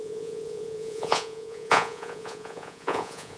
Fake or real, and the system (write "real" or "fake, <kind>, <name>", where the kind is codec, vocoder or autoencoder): fake, vocoder, Vocos